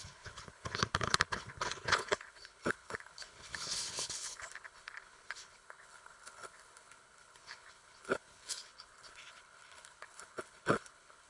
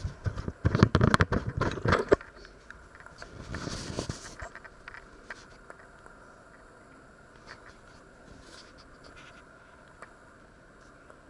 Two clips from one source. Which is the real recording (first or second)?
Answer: second